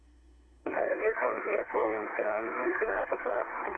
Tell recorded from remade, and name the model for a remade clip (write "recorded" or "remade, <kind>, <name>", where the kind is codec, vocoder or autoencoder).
remade, codec, SNAC